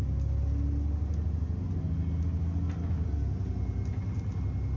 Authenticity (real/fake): real